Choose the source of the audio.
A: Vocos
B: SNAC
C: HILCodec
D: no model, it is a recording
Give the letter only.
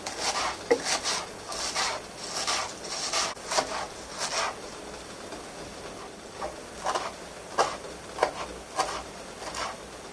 D